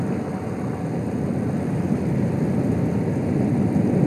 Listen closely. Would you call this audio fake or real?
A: real